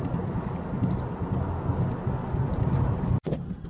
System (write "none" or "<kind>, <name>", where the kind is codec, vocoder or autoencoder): none